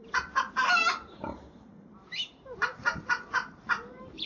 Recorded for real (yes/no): no